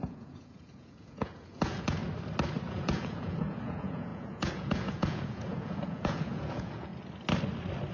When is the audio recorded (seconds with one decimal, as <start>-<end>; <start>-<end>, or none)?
2.0-2.7; 6.9-7.9